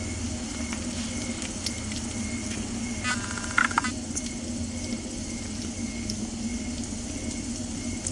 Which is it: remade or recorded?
recorded